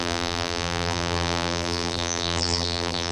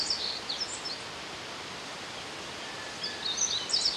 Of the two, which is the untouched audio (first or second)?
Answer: second